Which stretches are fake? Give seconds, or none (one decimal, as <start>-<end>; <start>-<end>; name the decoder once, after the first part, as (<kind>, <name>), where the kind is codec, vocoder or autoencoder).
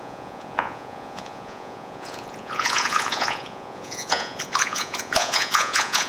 0.0-6.1 (vocoder, Vocos)